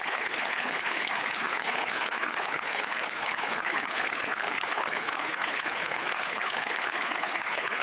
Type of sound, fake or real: fake